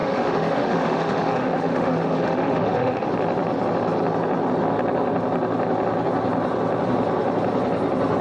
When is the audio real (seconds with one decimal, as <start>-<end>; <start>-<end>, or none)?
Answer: 3.1-8.2